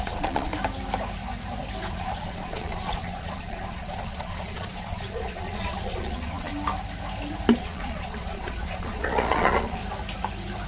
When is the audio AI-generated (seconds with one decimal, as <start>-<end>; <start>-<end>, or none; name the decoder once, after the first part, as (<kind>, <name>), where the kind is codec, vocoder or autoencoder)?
0.0-0.5 (vocoder, Vocos); 1.9-6.5; 7.6-9.8

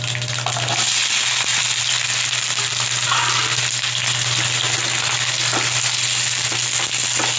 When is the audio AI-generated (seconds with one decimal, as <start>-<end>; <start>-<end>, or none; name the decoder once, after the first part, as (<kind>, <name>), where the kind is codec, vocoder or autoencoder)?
none

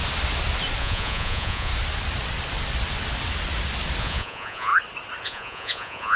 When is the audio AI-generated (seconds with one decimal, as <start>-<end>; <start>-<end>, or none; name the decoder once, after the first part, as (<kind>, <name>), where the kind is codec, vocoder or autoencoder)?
0.8-1.7 (vocoder, Vocos); 4.0-4.7; 5.2-6.2

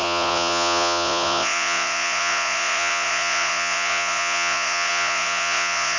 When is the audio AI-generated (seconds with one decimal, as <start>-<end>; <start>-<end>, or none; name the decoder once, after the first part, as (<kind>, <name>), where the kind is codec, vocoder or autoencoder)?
0.0-6.0 (vocoder, Vocos)

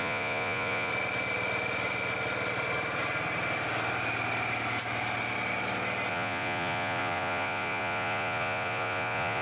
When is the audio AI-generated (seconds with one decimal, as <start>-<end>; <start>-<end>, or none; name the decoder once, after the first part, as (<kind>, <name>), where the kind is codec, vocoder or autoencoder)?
0.0-0.9 (vocoder, Vocos); 6.1-9.4